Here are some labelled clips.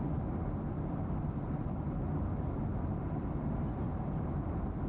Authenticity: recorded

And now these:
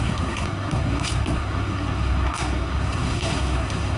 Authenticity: remade